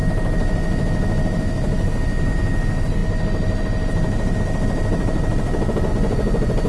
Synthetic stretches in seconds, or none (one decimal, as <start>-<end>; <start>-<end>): 5.9-6.7